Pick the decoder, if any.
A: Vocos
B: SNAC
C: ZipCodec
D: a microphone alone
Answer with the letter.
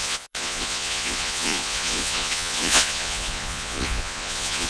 A